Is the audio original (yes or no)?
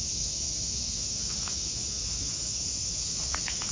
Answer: no